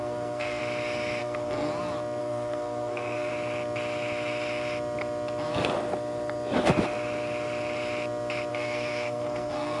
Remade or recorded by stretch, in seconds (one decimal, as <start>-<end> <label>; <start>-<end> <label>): 0.0-0.6 remade; 0.6-1.2 recorded; 1.2-1.7 remade; 1.7-2.2 recorded; 2.2-3.3 remade; 3.3-8.5 recorded; 8.5-9.8 remade